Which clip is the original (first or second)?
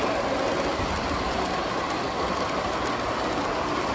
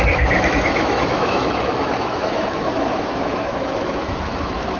first